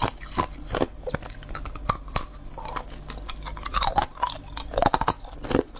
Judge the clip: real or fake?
real